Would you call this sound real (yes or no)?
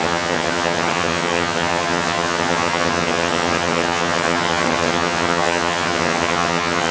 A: no